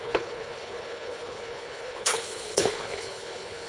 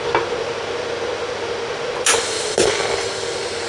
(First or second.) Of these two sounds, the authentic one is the second